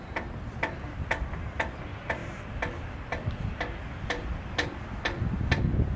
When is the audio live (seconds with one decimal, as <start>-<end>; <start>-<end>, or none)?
0.0-6.0